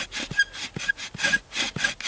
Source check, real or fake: real